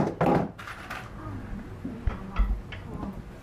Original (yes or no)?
yes